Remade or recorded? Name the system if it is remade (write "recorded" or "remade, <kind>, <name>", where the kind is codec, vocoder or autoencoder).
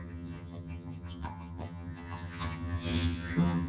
remade, vocoder, HiFi-GAN